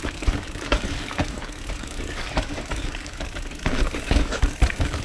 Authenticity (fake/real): fake